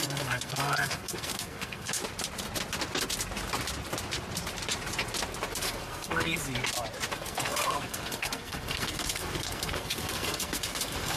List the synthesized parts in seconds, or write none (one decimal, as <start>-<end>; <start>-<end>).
0.0-2.0; 5.6-6.4; 7.1-11.2